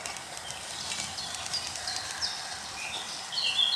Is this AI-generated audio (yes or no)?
no